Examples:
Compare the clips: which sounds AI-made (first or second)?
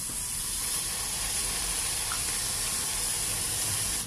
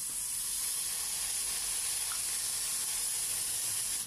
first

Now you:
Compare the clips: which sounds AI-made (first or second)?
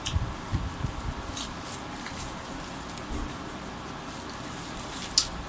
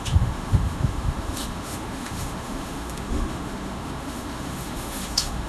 second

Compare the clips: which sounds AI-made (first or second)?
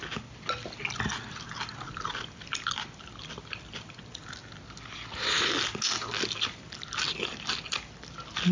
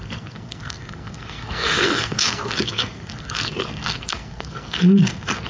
second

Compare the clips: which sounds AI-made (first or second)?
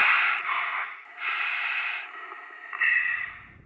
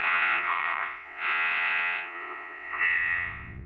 second